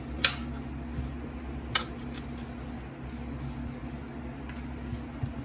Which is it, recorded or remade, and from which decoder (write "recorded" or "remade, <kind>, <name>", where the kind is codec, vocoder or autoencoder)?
recorded